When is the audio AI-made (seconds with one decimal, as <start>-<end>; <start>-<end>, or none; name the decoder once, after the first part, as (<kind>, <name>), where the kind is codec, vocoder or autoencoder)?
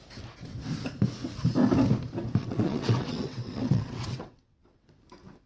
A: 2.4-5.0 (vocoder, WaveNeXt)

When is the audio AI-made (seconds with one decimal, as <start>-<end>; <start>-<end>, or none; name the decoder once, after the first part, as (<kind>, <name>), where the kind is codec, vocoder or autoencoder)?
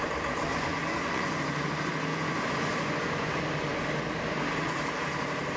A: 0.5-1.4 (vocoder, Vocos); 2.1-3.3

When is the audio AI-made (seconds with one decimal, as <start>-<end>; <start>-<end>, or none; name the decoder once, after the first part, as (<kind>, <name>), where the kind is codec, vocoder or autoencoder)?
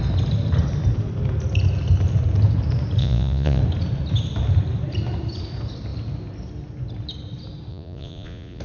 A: 3.0-3.6 (vocoder, Vocos); 7.7-8.6